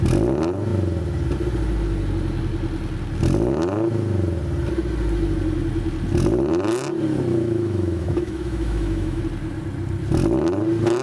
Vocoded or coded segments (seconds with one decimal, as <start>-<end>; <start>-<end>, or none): 7.3-9.2